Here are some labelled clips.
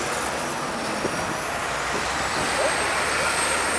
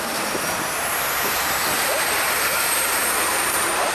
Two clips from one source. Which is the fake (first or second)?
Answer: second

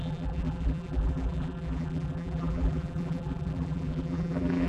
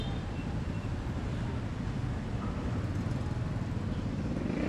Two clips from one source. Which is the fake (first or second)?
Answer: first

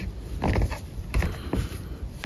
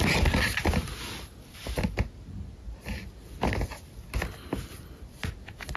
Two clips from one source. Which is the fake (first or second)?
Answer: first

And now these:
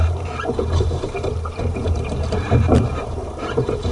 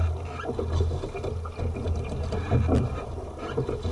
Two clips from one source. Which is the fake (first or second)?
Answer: first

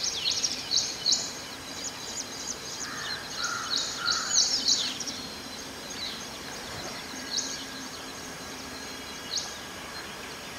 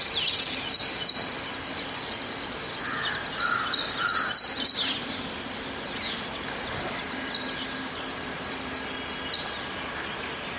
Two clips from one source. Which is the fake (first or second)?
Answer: first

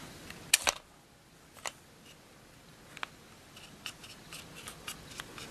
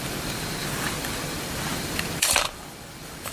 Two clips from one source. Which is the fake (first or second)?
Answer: second